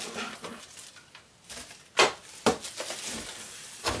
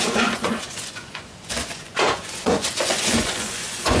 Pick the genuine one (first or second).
first